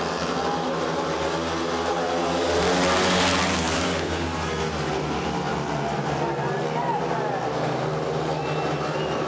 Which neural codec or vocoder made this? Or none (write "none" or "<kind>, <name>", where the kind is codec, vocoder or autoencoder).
none